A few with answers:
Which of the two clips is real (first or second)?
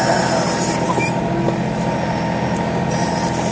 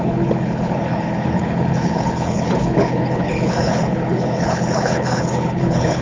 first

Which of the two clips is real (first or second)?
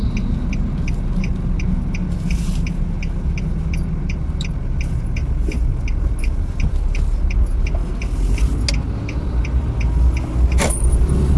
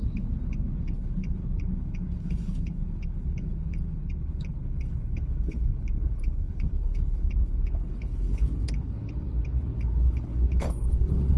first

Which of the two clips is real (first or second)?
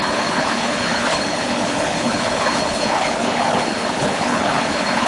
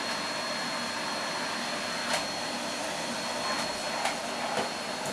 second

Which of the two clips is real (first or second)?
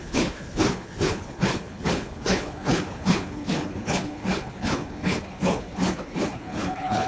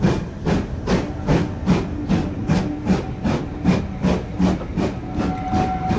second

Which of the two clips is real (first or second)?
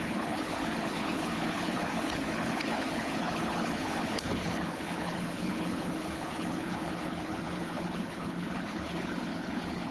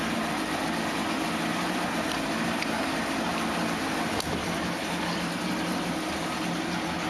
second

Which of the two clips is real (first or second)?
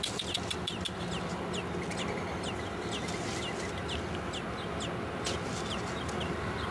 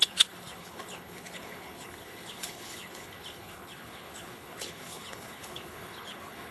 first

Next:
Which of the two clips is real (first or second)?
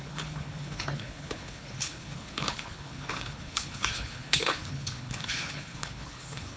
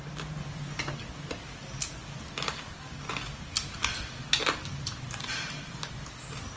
second